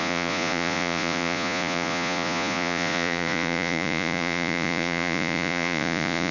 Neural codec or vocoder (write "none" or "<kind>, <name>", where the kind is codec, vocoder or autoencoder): vocoder, Vocos